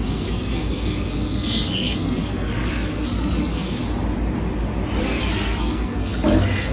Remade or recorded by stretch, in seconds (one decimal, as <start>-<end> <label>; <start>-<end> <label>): 0.0-3.8 remade; 3.8-5.0 recorded; 5.0-6.7 remade